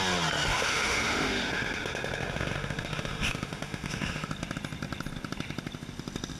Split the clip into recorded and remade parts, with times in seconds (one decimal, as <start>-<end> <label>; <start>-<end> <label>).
0.0-0.5 recorded; 0.5-4.3 remade; 4.3-6.4 recorded